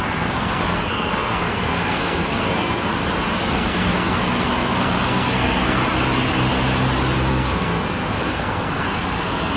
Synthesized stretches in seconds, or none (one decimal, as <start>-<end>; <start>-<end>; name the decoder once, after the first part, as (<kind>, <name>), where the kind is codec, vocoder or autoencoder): 0.0-2.9 (codec, SNAC); 3.5-5.8; 7.3-9.6